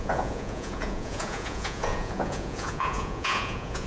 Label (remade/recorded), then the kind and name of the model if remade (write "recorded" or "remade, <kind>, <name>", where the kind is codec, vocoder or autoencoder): remade, vocoder, Vocos